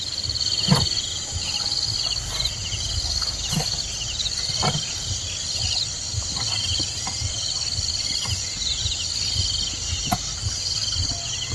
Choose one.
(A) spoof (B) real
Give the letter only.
B